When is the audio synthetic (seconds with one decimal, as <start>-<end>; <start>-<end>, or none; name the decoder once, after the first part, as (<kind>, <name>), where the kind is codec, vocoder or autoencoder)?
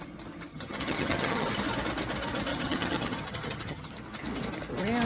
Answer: 0.5-1.5 (vocoder, HiFi-GAN); 2.5-3.9